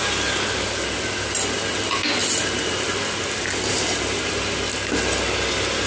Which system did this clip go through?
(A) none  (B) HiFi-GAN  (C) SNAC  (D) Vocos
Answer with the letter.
A